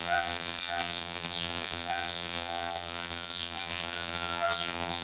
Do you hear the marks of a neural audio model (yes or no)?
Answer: yes